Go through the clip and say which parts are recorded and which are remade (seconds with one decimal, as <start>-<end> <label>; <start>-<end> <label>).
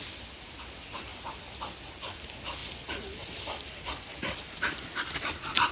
0.0-1.1 remade; 1.1-1.9 recorded; 1.9-5.7 remade